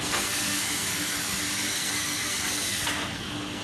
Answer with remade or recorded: remade